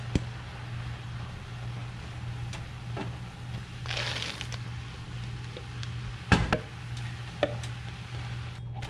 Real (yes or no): yes